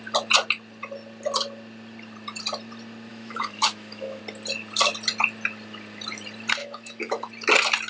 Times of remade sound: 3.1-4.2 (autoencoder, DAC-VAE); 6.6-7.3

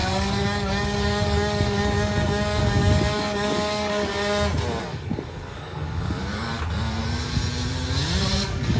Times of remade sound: 0.0-4.1 (codec, DAC); 4.9-6.5; 7.0-7.4; 8.2-8.8

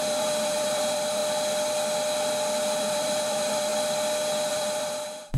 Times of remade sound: 0.0-1.2 (vocoder, BigVGAN v2); 2.8-3.7; 4.5-5.4

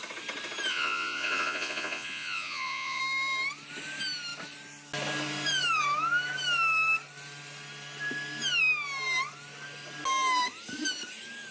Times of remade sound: 0.7-3.0 (vocoder, Vocos)

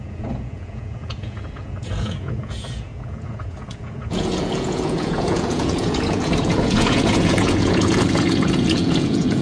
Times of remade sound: 0.0-9.4 (vocoder, Vocos)

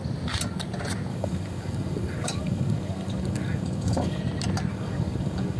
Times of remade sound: 1.1-4.2 (codec, DAC); 4.7-5.6

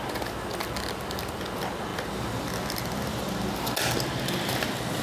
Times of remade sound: none

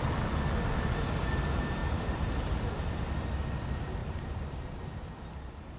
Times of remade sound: 1.8-2.6 (vocoder, BigVGAN v2); 4.0-4.8